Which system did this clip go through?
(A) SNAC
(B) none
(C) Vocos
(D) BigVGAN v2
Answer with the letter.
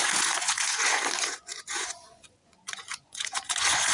C